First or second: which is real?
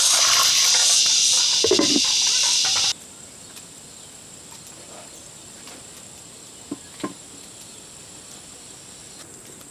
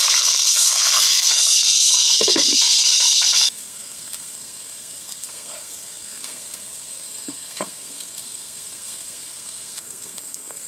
first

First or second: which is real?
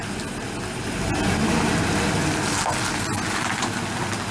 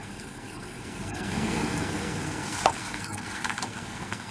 first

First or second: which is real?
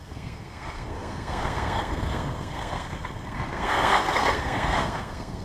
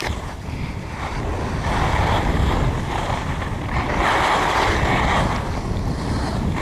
second